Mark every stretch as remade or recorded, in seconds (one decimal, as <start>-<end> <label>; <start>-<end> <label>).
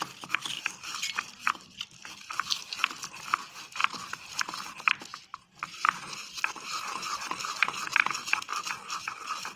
0.0-9.6 recorded